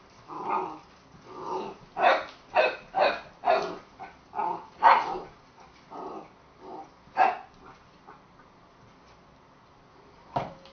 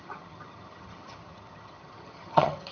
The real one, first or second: first